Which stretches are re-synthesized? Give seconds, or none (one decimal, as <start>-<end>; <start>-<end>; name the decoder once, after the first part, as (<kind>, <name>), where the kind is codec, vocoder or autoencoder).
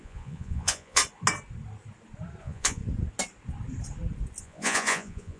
0.0-1.0 (vocoder, Vocos); 2.4-2.8; 4.4-5.4